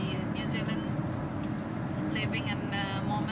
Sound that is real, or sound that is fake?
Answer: real